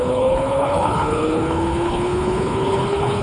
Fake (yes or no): yes